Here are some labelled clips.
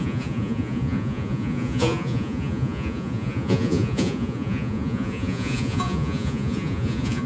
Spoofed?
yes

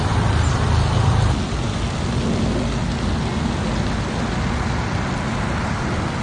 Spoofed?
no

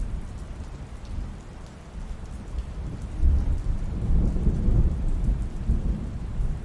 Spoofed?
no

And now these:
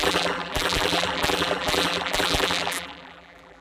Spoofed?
yes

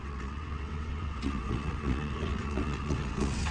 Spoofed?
yes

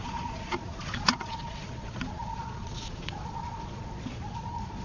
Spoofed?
yes